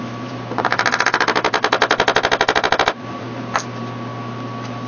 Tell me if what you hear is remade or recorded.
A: recorded